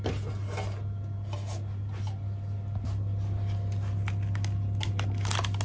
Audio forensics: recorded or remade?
recorded